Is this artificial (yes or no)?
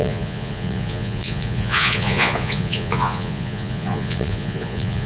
yes